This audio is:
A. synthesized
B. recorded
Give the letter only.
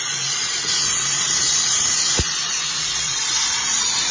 A